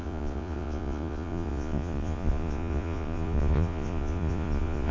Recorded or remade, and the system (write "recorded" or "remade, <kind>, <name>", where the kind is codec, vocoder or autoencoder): remade, vocoder, Vocos